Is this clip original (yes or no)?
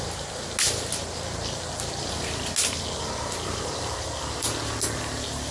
yes